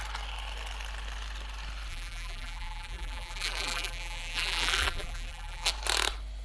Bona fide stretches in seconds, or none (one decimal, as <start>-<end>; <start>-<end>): 0.0-1.9; 5.7-6.4